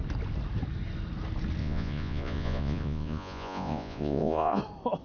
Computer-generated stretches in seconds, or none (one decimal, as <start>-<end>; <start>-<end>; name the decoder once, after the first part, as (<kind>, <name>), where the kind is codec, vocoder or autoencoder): 1.6-4.6 (vocoder, Vocos)